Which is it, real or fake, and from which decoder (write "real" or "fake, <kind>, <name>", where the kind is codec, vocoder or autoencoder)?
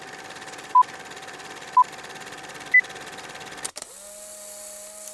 real